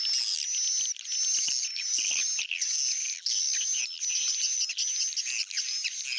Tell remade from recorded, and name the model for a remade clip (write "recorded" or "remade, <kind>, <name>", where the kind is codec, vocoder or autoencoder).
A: recorded